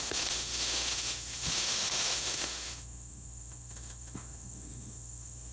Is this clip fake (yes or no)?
yes